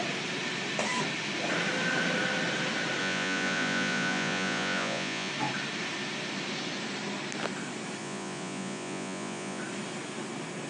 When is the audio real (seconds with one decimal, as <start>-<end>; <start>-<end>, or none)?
0.0-3.0; 5.3-8.0; 9.6-10.7